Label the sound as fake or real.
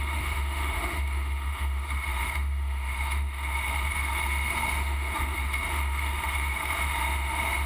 fake